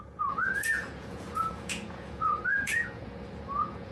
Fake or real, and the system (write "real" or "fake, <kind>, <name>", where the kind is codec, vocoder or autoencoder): fake, vocoder, Vocos